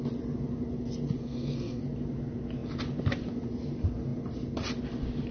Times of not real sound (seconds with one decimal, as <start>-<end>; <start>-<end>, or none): 1.2-1.8